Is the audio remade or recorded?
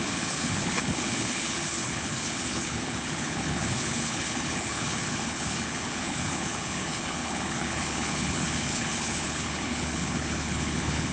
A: remade